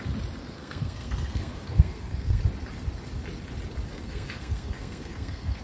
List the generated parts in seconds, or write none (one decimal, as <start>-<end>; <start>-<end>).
0.4-2.4; 3.9-5.6